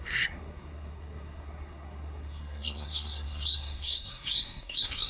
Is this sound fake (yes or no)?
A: yes